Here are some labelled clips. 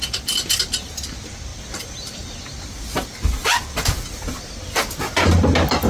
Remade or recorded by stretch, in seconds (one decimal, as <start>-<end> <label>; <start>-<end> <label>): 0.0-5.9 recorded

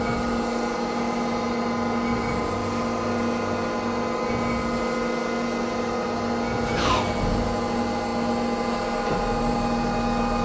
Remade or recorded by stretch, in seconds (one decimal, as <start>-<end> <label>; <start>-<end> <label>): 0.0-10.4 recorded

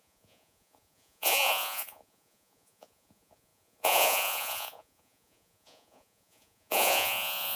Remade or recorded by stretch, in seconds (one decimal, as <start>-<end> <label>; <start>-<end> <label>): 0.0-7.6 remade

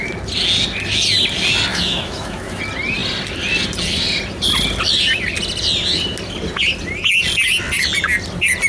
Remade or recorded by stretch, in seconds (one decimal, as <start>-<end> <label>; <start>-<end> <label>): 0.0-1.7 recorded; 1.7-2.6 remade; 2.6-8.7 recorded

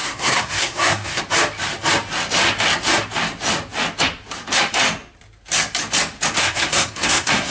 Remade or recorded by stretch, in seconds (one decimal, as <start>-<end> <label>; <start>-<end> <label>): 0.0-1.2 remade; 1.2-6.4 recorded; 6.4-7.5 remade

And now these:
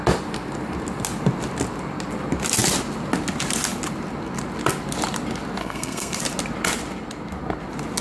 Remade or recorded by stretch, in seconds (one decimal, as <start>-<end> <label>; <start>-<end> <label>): 0.0-5.6 recorded; 5.6-6.2 remade; 6.2-8.0 recorded

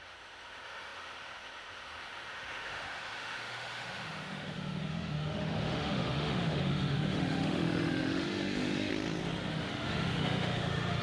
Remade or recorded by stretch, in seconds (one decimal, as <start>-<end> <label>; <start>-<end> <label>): 0.0-8.9 remade; 8.9-9.5 recorded; 9.5-11.0 remade